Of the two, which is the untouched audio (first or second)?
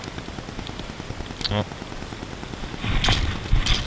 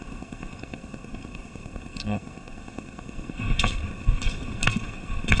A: first